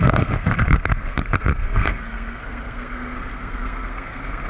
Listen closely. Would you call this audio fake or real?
fake